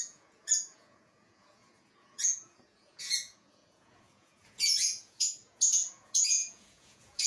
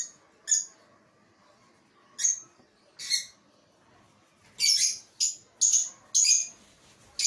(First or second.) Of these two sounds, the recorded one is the second